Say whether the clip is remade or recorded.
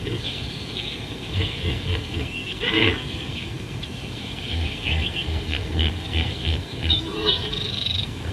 remade